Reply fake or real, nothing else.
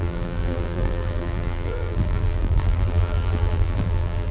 fake